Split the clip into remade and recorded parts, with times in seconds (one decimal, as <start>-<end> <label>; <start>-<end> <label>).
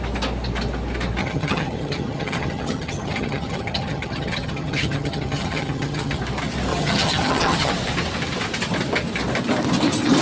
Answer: 0.0-1.2 recorded; 1.2-6.2 remade; 6.2-6.7 recorded; 6.7-7.7 remade; 7.7-10.2 recorded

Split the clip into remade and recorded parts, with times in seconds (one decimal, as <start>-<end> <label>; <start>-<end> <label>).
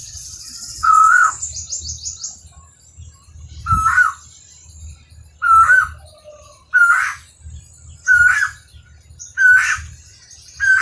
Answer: 0.0-1.3 remade; 1.3-10.8 recorded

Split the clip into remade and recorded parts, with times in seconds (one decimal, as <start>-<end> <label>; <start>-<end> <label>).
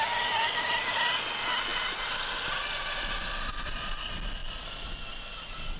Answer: 0.0-5.8 recorded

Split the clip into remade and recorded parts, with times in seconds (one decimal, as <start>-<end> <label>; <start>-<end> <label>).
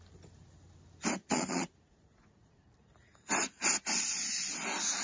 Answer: 0.0-1.2 recorded; 1.2-2.6 remade; 2.6-5.0 recorded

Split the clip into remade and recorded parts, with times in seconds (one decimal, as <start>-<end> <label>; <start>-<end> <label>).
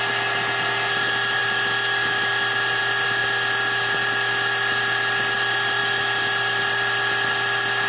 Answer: 0.0-7.9 recorded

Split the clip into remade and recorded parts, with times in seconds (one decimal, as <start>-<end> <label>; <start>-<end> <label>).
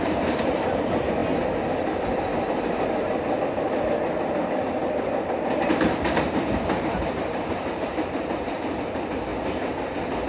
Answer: 0.0-1.2 remade; 1.2-5.7 recorded; 5.7-9.3 remade; 9.3-10.3 recorded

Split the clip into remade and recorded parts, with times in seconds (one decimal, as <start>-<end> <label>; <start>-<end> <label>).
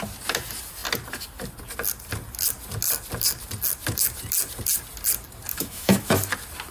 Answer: 0.0-5.5 recorded; 5.5-6.1 remade; 6.1-6.7 recorded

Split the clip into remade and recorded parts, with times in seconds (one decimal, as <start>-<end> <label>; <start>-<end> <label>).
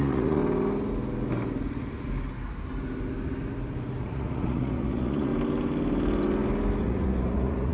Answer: 0.0-0.4 remade; 0.4-4.0 recorded; 4.0-5.3 remade; 5.3-6.8 recorded; 6.8-7.7 remade